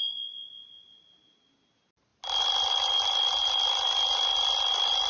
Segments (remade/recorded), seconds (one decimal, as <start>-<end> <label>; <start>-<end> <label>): 0.0-5.1 recorded